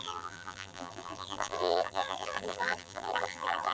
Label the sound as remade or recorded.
remade